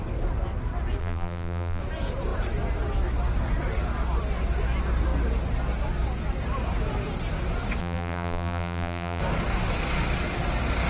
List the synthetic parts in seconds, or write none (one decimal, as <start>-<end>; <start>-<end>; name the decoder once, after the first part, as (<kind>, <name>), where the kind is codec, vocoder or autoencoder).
1.0-1.8 (vocoder, BigVGAN v2); 7.8-9.2